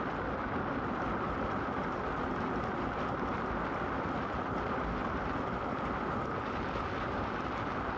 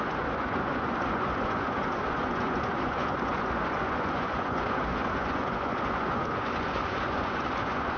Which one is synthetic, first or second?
second